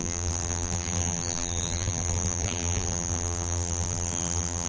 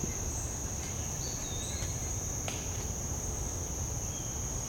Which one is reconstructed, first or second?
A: first